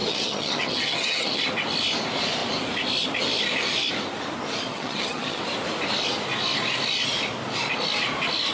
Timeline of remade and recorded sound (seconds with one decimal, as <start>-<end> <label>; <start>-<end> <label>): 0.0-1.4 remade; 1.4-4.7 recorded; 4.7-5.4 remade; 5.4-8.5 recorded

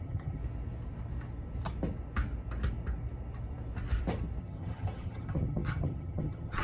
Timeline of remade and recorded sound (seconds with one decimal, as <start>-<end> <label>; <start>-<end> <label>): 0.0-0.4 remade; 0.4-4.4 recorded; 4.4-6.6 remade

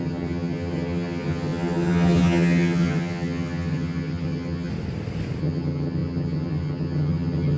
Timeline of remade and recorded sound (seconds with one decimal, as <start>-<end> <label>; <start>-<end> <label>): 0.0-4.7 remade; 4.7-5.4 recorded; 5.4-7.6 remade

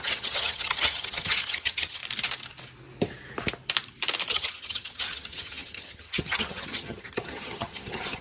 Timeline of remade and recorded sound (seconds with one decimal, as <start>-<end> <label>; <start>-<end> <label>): 0.0-2.0 remade; 2.0-4.3 recorded; 4.3-8.2 remade